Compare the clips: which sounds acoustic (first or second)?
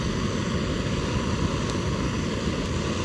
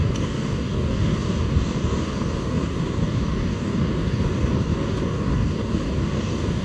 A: first